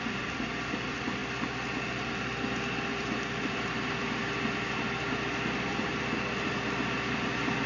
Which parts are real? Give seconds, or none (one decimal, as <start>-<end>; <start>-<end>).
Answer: 1.2-2.0